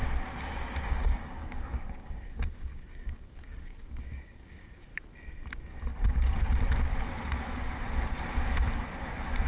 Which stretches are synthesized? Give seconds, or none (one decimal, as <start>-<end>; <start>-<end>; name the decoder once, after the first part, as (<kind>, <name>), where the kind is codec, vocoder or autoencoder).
0.8-4.9 (codec, DAC)